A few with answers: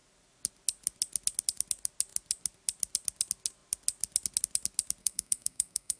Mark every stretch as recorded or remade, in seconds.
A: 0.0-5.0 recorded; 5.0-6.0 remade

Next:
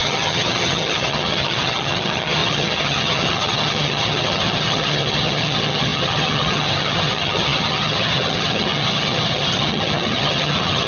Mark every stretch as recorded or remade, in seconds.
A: 0.0-10.9 remade

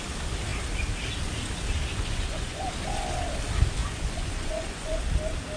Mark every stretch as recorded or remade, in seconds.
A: 0.0-1.9 recorded; 1.9-2.7 remade; 2.7-3.8 recorded; 3.8-5.0 remade; 5.0-5.6 recorded

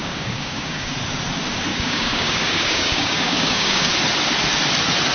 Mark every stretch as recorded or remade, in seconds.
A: 0.0-0.9 remade; 0.9-1.7 recorded; 1.7-3.9 remade; 3.9-5.1 recorded

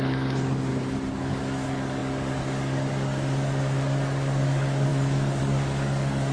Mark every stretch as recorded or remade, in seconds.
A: 0.0-0.7 remade; 0.7-1.2 recorded; 1.2-6.3 remade